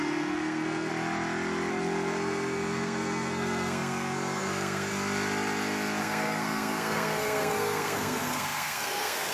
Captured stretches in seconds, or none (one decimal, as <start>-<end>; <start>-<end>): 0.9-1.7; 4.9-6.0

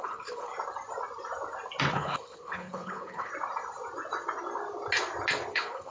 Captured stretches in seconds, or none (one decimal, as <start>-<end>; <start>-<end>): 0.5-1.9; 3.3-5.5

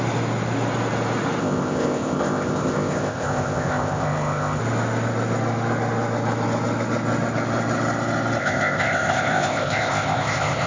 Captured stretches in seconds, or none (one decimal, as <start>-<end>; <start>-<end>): 0.0-1.4; 4.6-8.4

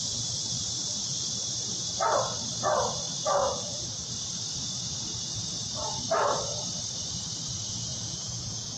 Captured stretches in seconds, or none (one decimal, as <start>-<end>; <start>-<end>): 0.0-3.4; 4.1-4.6; 5.5-7.9